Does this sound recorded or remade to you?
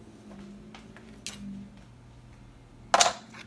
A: recorded